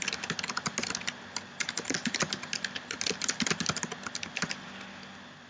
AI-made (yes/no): no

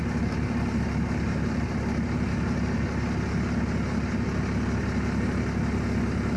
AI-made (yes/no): no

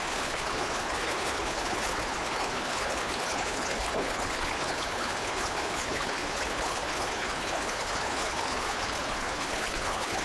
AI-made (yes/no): yes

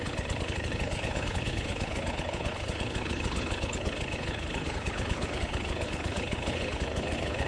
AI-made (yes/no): yes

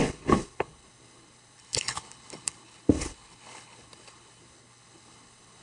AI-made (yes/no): yes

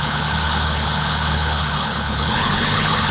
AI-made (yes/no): yes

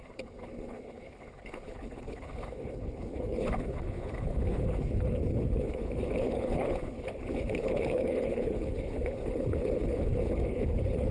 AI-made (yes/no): yes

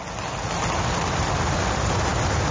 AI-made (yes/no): no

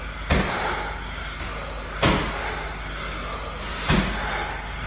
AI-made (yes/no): no